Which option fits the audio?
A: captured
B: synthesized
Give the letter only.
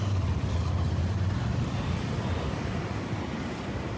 A